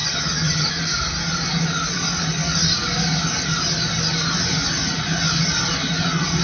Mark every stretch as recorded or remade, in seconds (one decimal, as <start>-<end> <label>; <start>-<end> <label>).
0.0-0.7 remade; 0.7-6.4 recorded